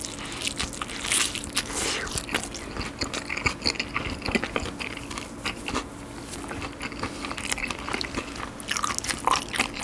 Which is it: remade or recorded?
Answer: recorded